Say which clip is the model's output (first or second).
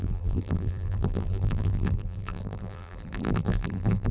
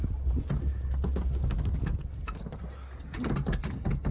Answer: first